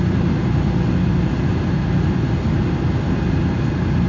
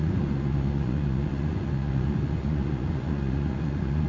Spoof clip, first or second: second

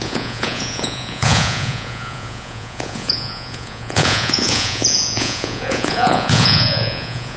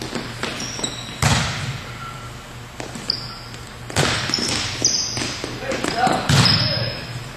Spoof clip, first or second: first